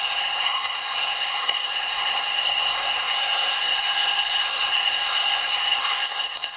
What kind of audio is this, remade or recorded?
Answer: remade